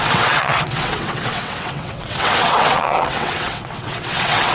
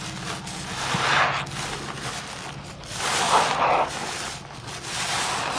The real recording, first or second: second